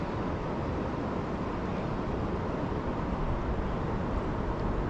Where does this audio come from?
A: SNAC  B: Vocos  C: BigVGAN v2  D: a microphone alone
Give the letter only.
D